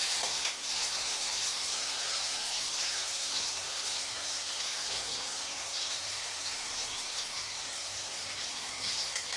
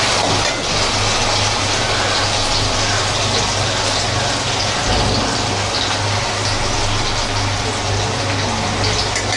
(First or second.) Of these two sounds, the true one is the second